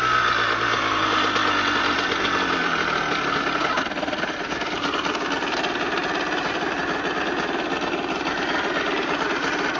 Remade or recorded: recorded